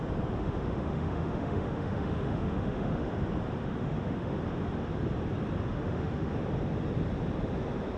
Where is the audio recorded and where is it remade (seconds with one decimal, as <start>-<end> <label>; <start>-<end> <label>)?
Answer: 0.0-0.4 recorded; 0.4-3.1 remade; 3.1-3.6 recorded; 3.6-4.3 remade; 4.3-5.7 recorded; 5.7-6.3 remade; 6.3-8.0 recorded